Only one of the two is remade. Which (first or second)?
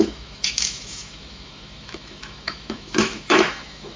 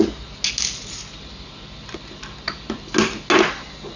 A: first